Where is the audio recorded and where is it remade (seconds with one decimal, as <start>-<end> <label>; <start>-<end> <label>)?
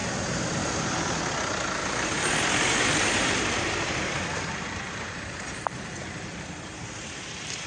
0.0-0.8 remade; 0.8-1.8 recorded; 1.8-6.4 remade; 6.4-7.7 recorded